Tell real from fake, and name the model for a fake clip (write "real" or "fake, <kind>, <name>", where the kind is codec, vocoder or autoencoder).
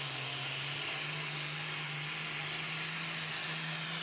real